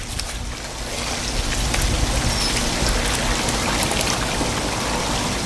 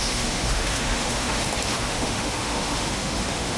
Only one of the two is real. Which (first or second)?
first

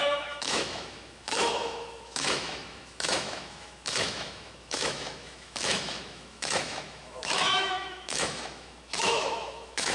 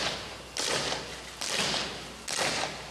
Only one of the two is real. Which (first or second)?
second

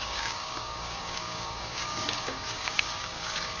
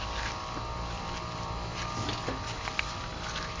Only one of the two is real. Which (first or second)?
second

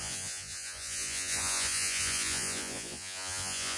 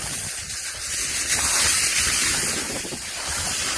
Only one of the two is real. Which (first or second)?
second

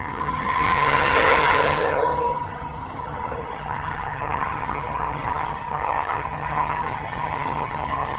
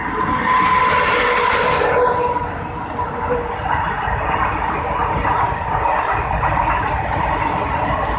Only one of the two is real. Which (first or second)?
second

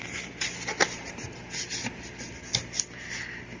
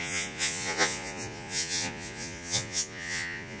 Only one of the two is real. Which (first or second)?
first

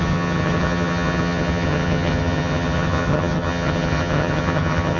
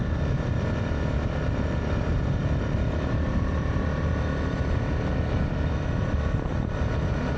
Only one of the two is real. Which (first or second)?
second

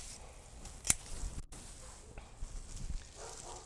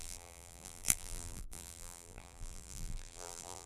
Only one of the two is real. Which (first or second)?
first